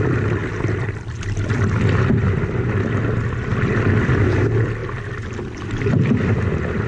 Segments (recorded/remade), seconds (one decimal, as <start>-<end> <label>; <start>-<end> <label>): 0.0-0.4 recorded; 0.4-0.9 remade; 0.9-3.5 recorded; 3.5-4.1 remade; 4.1-4.8 recorded; 4.8-5.9 remade; 5.9-6.9 recorded